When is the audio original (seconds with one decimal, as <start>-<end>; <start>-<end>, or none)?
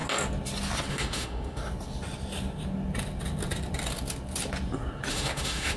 0.0-0.9; 1.6-5.1